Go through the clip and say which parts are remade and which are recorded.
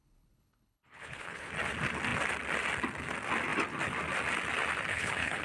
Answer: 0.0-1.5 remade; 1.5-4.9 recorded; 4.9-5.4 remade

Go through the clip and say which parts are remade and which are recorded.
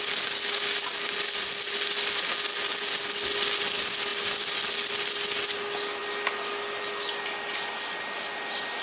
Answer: 0.0-8.8 recorded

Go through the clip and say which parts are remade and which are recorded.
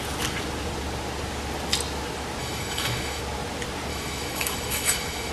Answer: 0.0-2.4 recorded; 2.4-3.2 remade; 3.2-3.9 recorded; 3.9-5.3 remade